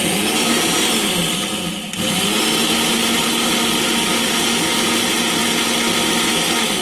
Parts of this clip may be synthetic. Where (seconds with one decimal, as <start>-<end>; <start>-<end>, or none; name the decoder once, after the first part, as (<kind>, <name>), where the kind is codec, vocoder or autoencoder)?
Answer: none